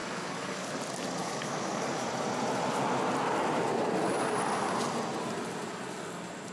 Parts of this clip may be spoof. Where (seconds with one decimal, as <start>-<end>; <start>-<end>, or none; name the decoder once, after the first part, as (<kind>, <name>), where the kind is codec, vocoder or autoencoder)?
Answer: 0.0-0.7 (codec, DAC); 1.2-2.1

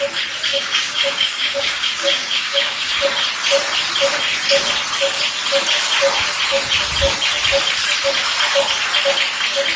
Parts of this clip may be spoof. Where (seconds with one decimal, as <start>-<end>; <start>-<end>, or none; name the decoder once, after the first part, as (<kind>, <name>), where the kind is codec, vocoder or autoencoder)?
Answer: 0.5-2.9 (codec, DAC)

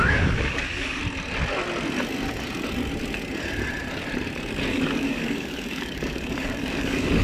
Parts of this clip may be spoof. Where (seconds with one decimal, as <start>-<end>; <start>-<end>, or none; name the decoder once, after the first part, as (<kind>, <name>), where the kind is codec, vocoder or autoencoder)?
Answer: 0.0-1.0 (codec, DAC); 4.7-7.2